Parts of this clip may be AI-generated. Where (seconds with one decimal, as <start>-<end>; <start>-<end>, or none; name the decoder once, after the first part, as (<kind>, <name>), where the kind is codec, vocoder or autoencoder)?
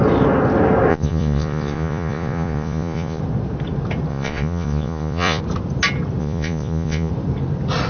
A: 0.9-3.2 (vocoder, Vocos); 4.1-5.4; 6.2-7.1